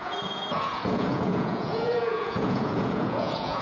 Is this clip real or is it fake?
fake